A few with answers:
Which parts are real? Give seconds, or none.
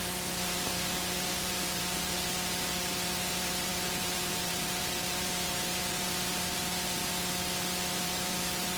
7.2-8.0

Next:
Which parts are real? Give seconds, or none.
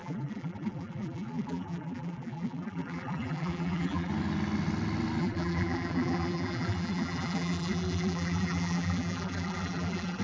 4.1-5.2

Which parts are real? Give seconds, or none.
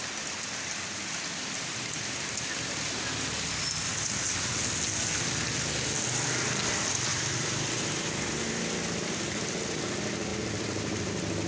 4.4-7.1; 9.5-10.3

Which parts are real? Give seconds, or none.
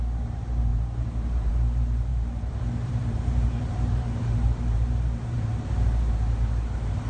0.0-0.7; 1.5-2.1; 5.6-7.1